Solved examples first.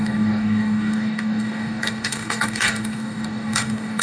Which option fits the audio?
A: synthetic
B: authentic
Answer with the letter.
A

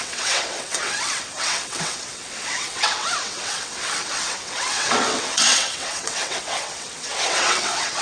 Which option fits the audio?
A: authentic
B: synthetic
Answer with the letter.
B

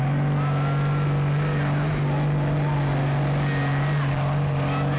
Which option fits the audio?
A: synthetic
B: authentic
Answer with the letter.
B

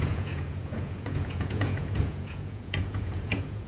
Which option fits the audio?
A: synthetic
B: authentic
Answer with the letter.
A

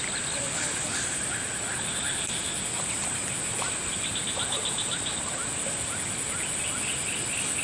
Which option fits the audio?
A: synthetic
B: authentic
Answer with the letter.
B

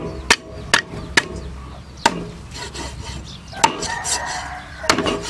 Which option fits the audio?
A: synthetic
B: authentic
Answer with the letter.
B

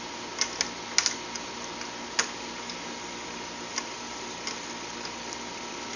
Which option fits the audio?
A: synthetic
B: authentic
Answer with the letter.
B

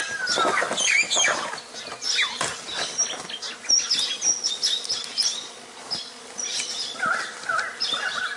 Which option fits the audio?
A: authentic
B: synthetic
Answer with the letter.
A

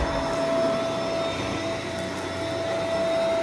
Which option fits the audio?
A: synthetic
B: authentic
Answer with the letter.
B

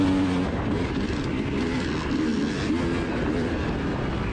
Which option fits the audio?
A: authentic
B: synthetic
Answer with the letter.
A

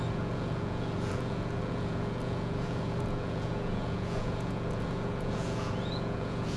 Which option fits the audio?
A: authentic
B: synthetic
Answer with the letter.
B